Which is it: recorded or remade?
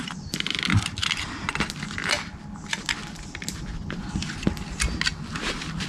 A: recorded